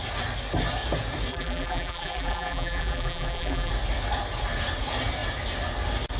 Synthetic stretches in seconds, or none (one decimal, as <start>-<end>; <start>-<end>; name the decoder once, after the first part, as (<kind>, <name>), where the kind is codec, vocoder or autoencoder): 1.3-3.7 (vocoder, BigVGAN v2)

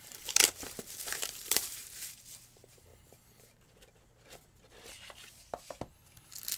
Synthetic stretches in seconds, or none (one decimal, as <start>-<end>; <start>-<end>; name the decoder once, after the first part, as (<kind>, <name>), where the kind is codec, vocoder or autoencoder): 0.0-2.9 (vocoder, BigVGAN v2)

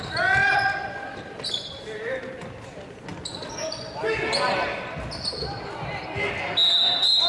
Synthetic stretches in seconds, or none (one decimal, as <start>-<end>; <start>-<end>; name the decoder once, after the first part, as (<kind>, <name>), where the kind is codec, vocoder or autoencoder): 0.4-1.7 (vocoder, BigVGAN v2)

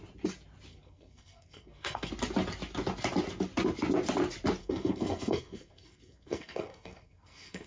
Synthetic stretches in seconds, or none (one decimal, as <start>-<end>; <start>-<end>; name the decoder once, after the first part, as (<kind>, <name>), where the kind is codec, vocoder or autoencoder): 0.7-2.1 (codec, SNAC); 4.6-7.7

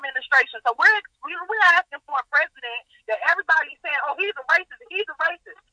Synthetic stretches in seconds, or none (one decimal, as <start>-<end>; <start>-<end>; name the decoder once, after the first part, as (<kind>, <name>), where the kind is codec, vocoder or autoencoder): 0.0-3.4 (autoencoder, DAC-VAE)

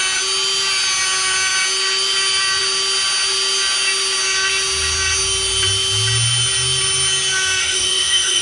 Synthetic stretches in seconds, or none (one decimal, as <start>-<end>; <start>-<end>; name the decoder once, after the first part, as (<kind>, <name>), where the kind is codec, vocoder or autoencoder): 7.6-8.4 (autoencoder, DAC-VAE)